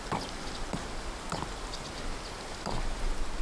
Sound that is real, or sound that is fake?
real